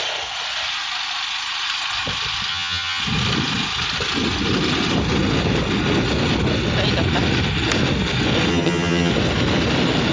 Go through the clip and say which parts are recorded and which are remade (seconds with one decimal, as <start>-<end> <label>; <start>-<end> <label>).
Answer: 0.0-2.5 recorded; 2.5-3.0 remade; 3.0-8.5 recorded; 8.5-9.1 remade; 9.1-10.1 recorded